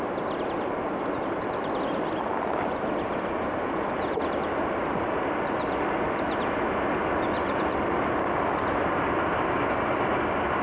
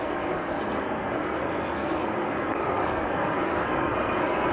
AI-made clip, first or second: second